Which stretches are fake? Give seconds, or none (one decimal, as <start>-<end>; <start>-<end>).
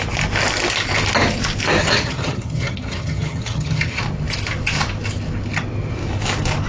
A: 1.8-4.0